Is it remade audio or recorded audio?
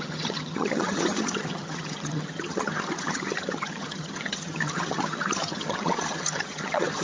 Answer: remade